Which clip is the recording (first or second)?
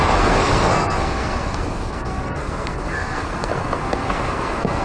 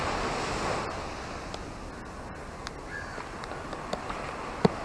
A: second